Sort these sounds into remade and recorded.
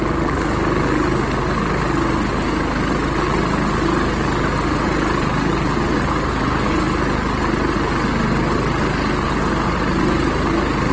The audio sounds recorded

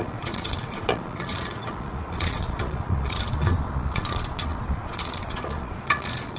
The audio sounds remade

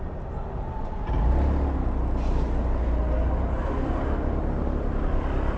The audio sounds recorded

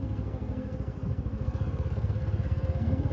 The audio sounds remade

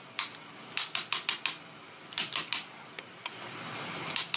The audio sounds recorded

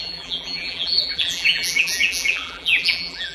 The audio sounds remade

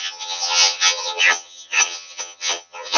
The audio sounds remade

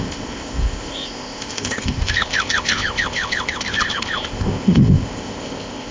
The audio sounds remade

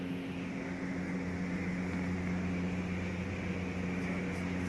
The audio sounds recorded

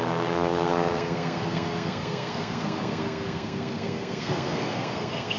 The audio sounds remade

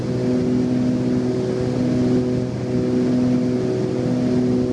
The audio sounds recorded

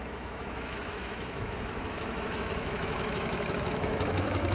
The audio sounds remade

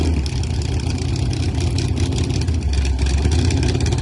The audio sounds recorded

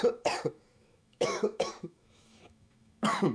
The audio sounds remade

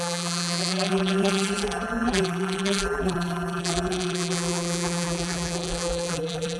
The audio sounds remade